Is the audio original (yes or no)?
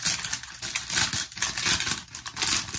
yes